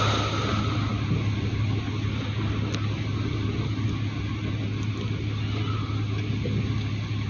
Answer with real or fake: real